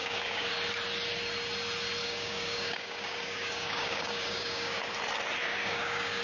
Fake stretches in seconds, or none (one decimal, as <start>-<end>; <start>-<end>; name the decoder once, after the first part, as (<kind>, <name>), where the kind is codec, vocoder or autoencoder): 0.0-0.5 (codec, DAC); 2.0-4.8; 5.4-6.2